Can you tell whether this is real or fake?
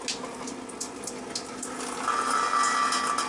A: real